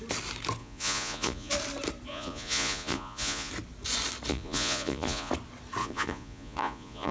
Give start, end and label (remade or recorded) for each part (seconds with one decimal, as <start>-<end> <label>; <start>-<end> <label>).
0.0-0.6 recorded; 0.6-1.5 remade; 1.5-2.1 recorded; 2.1-3.5 remade; 3.5-4.3 recorded; 4.3-5.3 remade; 5.3-5.8 recorded; 5.8-7.1 remade